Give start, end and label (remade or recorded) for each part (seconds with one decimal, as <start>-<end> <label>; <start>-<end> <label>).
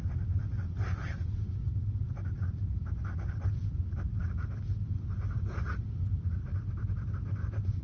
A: 0.0-7.8 recorded